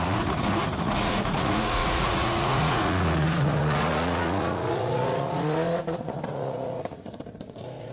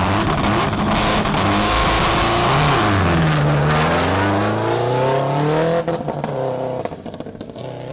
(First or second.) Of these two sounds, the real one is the second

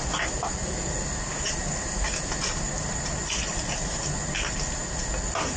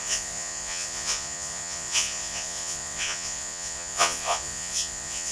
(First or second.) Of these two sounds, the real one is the first